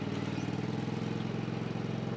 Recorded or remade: recorded